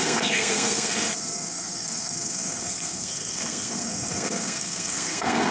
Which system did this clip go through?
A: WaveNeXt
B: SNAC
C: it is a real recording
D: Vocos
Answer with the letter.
B